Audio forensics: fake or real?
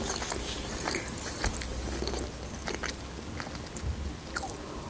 real